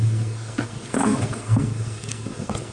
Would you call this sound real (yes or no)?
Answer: no